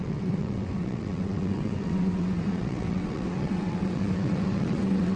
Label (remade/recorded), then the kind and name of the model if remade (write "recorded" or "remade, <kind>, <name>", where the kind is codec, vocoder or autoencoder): remade, vocoder, WaveNeXt